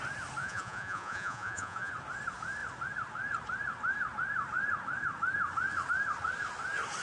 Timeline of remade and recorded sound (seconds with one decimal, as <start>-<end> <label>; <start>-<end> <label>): 0.0-0.4 recorded; 0.4-1.9 remade; 1.9-7.0 recorded